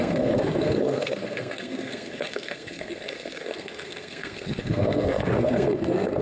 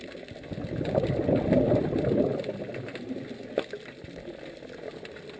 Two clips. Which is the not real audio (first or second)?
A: first